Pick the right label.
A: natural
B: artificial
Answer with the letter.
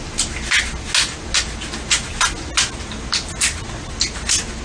A